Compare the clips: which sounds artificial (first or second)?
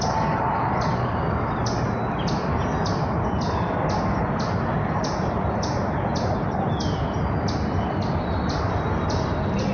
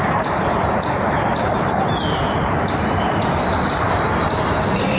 second